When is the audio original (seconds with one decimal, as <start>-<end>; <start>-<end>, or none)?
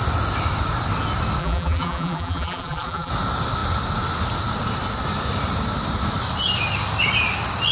0.0-1.4; 3.1-7.7